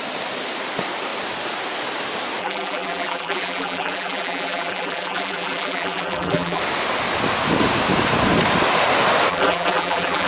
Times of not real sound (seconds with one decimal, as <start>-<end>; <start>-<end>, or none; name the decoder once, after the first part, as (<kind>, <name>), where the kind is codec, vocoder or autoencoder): 2.4-6.6 (vocoder, BigVGAN v2); 9.3-10.3